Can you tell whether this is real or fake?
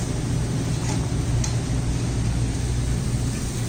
real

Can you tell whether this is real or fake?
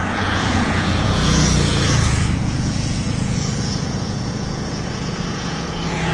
fake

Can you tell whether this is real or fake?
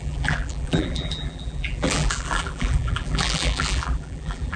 fake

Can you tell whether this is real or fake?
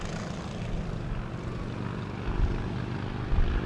real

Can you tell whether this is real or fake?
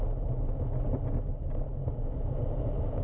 real